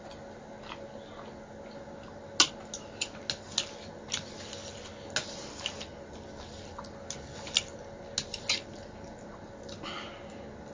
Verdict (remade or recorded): recorded